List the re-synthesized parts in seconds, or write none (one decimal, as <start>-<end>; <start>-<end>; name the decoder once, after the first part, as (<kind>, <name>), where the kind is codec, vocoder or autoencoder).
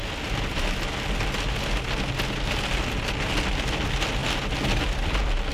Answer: none